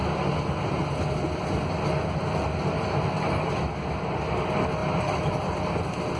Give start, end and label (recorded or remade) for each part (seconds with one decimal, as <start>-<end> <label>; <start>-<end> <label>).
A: 0.0-4.8 recorded; 4.8-5.3 remade; 5.3-6.2 recorded